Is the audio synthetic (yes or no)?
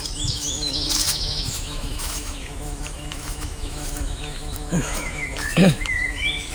yes